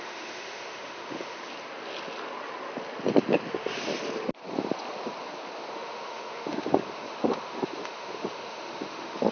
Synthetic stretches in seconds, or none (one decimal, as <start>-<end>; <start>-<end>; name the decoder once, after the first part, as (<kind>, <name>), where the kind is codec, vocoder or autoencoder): 0.0-1.4 (autoencoder, DAC-VAE); 3.5-3.9; 5.7-9.3